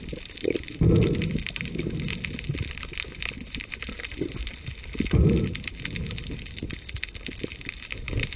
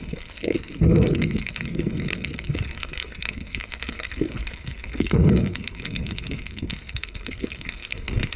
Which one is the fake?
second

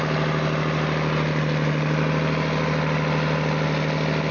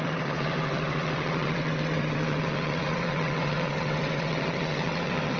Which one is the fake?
second